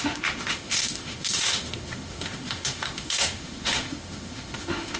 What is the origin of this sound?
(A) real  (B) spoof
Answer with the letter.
B